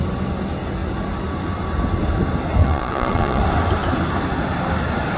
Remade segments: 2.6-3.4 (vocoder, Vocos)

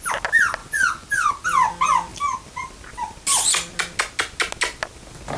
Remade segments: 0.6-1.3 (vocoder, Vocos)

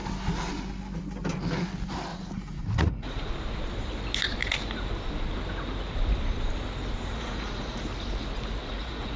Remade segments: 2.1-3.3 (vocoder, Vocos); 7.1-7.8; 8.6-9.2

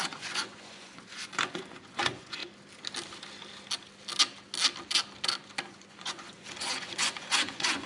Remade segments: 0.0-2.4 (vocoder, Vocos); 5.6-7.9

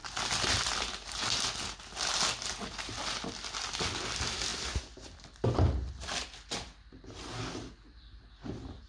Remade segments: none

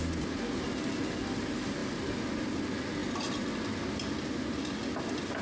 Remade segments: none

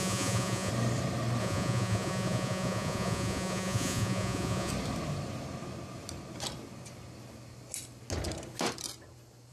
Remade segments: 0.0-0.7 (vocoder, Vocos); 1.4-4.7